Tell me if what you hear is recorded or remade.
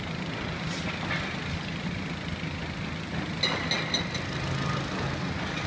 recorded